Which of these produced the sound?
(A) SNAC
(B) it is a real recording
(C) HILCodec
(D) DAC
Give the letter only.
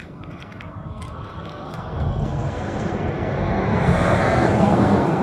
A